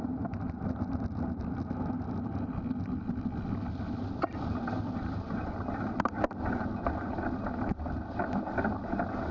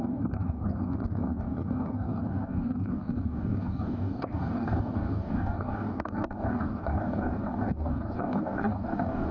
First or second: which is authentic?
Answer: first